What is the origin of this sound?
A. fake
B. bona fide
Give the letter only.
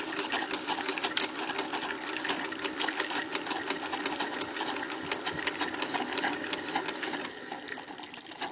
B